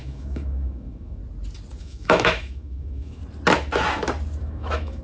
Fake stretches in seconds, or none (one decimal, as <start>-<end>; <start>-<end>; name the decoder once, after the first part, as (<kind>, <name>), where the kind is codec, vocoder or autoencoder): 0.0-1.2 (autoencoder, DAC-VAE); 1.8-3.2; 4.4-5.0